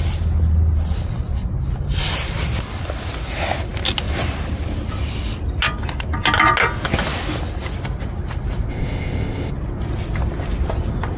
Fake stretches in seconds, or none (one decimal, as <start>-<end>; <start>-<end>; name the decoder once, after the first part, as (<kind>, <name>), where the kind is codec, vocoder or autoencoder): 8.7-9.5 (codec, ZipCodec)